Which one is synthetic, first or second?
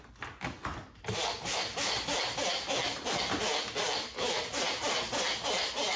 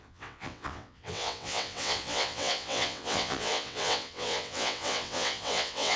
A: second